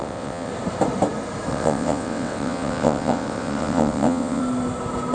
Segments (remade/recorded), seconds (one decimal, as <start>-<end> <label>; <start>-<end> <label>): 0.0-0.5 remade; 0.5-1.5 recorded; 1.5-4.4 remade; 4.4-5.1 recorded